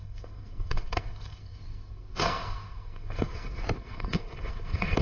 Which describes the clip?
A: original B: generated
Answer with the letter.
B